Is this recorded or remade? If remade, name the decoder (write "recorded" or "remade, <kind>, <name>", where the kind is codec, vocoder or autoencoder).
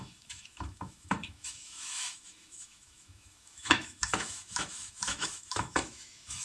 remade, autoencoder, DAC-VAE